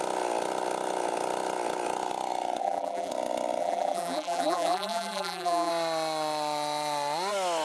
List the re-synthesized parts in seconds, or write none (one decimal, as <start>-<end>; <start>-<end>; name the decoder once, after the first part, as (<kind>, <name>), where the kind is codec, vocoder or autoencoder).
2.6-3.1 (vocoder, BigVGAN v2); 3.6-5.7